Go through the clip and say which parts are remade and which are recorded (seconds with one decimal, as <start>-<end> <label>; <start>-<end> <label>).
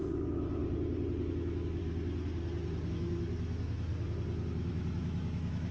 0.0-0.6 remade; 0.6-1.3 recorded; 1.3-1.8 remade; 1.8-2.9 recorded; 2.9-3.9 remade; 3.9-4.5 recorded; 4.5-5.7 remade